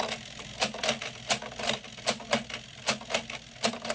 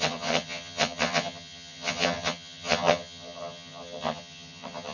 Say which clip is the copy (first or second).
second